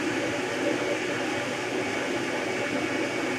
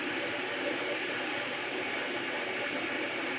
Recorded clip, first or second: first